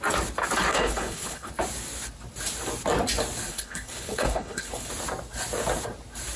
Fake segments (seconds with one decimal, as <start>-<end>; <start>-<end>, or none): 0.7-1.5; 3.5-4.9